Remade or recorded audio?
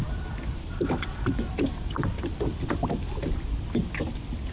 recorded